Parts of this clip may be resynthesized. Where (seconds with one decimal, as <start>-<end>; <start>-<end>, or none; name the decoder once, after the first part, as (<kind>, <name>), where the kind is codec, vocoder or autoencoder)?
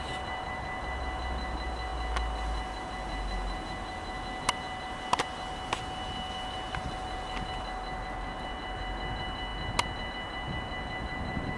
none